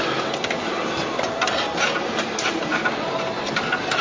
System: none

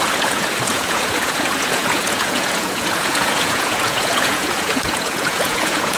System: vocoder, Vocos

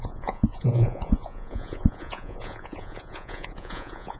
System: vocoder, Vocos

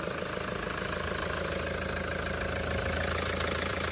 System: none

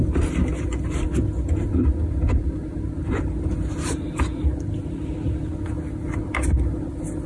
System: none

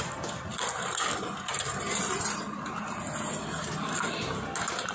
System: none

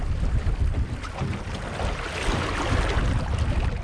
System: none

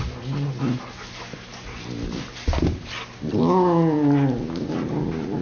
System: none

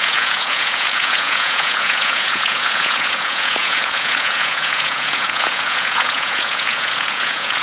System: vocoder, Vocos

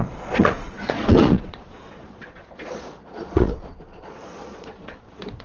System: vocoder, Vocos